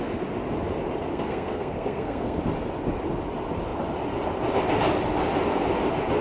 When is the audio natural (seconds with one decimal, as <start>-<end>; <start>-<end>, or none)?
0.0-1.1; 2.4-6.2